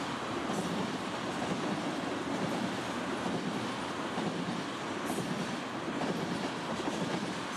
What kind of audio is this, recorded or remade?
recorded